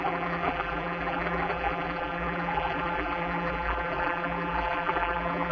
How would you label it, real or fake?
fake